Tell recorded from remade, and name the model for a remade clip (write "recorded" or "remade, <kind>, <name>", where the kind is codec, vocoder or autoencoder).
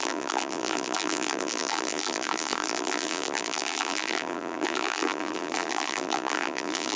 remade, vocoder, BigVGAN v2